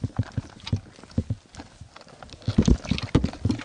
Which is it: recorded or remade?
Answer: recorded